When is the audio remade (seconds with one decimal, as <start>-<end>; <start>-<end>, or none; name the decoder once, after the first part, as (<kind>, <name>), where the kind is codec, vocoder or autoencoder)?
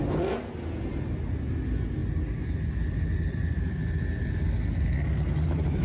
none